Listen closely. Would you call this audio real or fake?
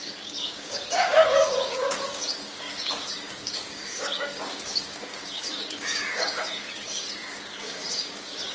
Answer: fake